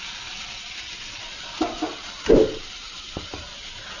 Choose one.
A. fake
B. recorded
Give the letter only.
B